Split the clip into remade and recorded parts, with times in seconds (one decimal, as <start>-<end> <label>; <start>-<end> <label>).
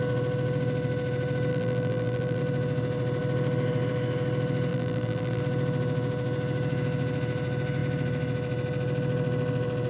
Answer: 0.0-1.5 recorded; 1.5-2.4 remade; 2.4-4.7 recorded; 4.7-5.4 remade; 5.4-9.9 recorded